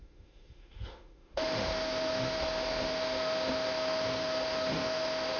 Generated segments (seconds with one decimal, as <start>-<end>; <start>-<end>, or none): 0.0-5.4